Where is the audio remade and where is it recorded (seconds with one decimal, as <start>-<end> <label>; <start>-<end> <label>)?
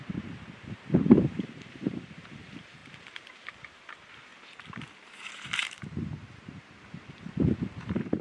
0.0-8.2 remade